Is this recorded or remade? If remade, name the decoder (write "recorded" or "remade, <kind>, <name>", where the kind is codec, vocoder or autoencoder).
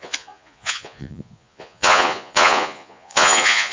remade, vocoder, Vocos